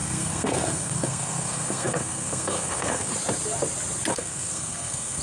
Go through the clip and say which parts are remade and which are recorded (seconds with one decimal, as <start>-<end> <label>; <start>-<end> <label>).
0.0-3.1 remade; 3.1-4.1 recorded; 4.1-5.2 remade